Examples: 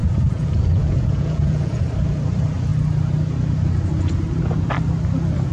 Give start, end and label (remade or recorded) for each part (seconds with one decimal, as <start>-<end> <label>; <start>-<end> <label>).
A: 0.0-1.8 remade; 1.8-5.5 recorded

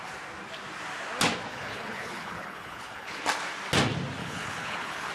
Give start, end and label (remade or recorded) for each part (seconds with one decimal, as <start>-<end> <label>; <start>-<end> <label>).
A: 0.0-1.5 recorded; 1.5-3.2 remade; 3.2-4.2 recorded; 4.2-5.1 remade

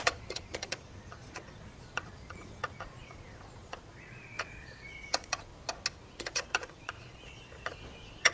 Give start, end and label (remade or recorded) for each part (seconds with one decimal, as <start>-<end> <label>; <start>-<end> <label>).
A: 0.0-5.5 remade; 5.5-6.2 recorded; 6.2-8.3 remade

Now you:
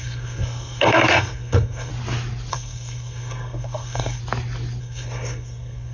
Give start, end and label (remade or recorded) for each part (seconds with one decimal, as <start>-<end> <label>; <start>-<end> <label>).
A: 0.0-1.9 remade; 1.9-2.5 recorded; 2.5-4.2 remade; 4.2-4.8 recorded; 4.8-5.9 remade

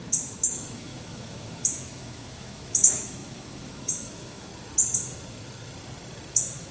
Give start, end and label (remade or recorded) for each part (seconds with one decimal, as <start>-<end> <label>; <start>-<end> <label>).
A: 0.0-4.5 remade; 4.5-6.3 recorded; 6.3-6.7 remade

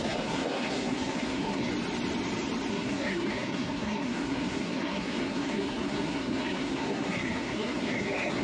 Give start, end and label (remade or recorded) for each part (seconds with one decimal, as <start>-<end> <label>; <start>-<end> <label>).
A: 0.0-1.7 remade; 1.7-2.7 recorded; 2.7-8.4 remade